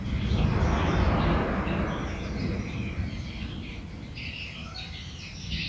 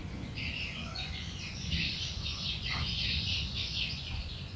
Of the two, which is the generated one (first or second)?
second